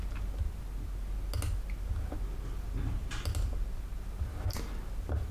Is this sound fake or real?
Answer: real